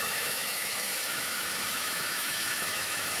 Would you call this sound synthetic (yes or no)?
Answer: yes